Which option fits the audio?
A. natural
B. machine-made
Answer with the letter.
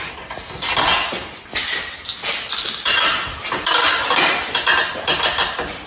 A